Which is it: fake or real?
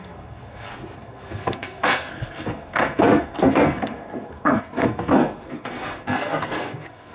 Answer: fake